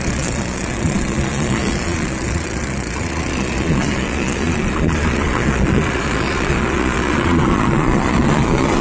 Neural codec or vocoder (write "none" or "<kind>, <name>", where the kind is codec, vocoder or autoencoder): vocoder, Vocos